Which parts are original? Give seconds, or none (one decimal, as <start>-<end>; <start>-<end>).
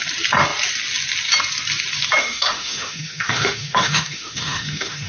0.0-2.2